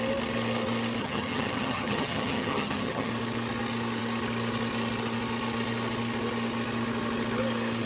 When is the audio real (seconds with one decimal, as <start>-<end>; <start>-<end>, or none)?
0.0-1.0; 3.1-7.9